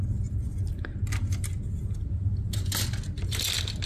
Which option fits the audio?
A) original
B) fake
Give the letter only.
A